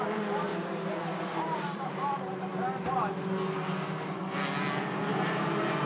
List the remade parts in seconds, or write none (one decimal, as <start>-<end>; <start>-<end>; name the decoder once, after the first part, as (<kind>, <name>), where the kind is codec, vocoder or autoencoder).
0.5-1.9 (vocoder, BigVGAN v2); 5.1-5.9